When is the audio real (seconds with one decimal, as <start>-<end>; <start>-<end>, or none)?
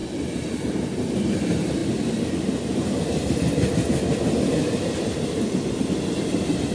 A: 0.0-6.7